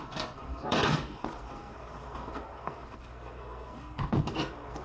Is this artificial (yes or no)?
yes